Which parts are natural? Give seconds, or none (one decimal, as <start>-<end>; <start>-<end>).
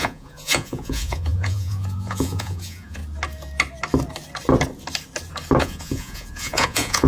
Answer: 3.0-5.6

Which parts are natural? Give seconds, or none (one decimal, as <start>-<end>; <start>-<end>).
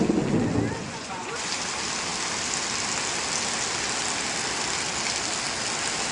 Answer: 0.0-0.8; 1.5-6.1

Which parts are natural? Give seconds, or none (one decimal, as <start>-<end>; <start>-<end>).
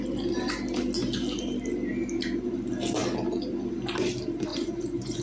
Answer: 0.0-4.5